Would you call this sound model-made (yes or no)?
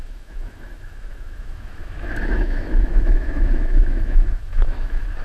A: yes